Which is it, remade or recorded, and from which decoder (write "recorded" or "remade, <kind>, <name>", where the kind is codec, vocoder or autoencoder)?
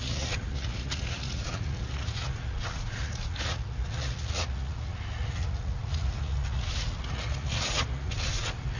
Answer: remade, vocoder, Vocos